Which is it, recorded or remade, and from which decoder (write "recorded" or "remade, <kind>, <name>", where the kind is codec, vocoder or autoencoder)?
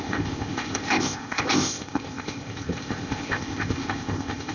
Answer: remade, codec, ZipCodec